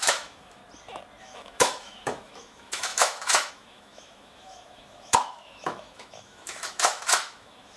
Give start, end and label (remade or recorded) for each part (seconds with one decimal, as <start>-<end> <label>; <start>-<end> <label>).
0.0-0.6 remade; 0.6-1.2 recorded; 1.2-7.8 remade